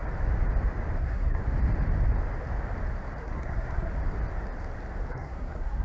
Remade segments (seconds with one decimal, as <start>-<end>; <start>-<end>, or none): 1.0-1.4; 3.2-3.9; 5.1-5.8